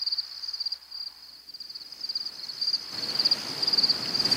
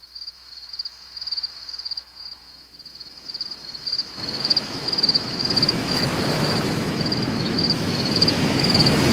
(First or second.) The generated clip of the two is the second